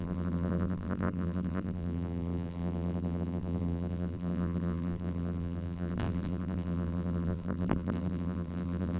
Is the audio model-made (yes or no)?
yes